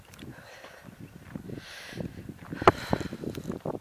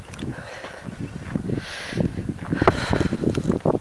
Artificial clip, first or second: first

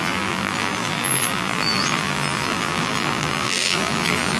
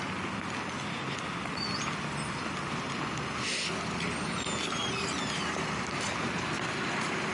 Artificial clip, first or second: first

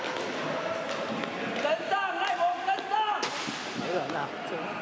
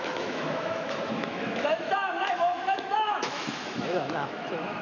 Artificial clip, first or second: second